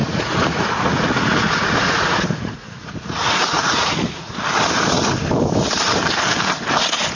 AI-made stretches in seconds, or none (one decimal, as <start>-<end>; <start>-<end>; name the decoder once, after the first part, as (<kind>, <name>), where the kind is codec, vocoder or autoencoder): 0.0-4.3 (vocoder, Vocos)